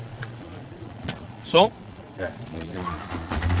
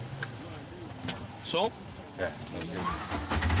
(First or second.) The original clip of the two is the second